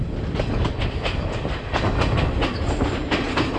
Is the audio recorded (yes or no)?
yes